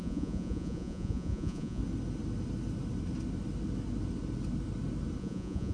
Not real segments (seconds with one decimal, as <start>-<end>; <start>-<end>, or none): 0.0-1.8; 5.2-5.7